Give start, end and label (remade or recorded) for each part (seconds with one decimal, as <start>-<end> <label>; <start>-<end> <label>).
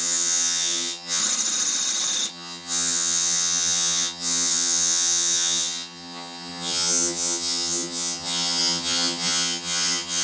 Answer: 0.0-1.2 remade; 1.2-2.3 recorded; 2.3-10.2 remade